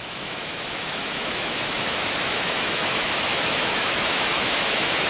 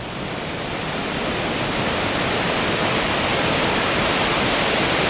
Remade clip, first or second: first